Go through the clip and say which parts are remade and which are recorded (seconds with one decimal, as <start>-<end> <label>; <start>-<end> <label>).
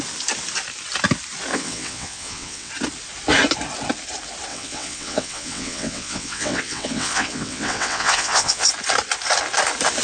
0.0-1.5 recorded; 1.5-2.7 remade; 2.7-4.5 recorded; 4.5-8.7 remade; 8.7-10.0 recorded